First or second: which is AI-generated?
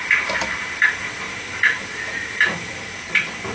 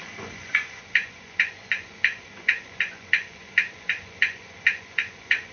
second